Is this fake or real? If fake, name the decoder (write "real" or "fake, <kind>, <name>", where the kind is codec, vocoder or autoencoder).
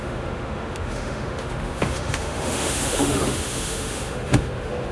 fake, autoencoder, DAC-VAE